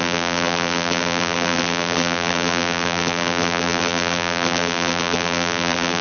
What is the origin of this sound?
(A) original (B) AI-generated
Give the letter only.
B